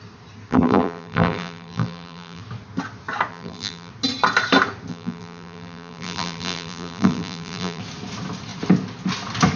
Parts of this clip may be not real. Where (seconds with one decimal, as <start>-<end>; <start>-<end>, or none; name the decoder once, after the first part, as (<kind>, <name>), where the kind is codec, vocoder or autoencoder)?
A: 0.5-2.4 (vocoder, BigVGAN v2); 3.3-3.9; 4.9-7.8